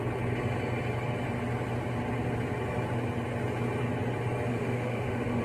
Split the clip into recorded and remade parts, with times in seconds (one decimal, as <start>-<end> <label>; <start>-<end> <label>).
0.0-4.5 recorded; 4.5-5.4 remade

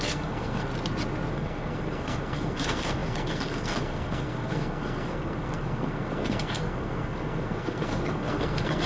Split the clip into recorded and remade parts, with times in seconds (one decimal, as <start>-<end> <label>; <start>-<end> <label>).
0.0-0.7 remade; 0.7-1.3 recorded; 1.3-8.9 remade